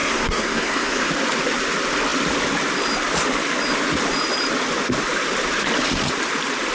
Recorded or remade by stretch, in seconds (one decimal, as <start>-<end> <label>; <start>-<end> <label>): 0.0-1.1 remade; 1.1-6.7 recorded